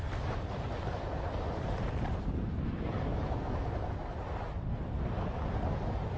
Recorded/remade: remade